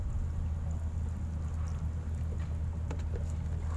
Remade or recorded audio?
recorded